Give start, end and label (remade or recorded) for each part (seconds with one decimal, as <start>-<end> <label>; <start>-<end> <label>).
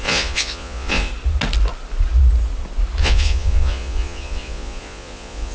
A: 0.0-1.1 remade; 1.1-3.0 recorded; 3.0-5.5 remade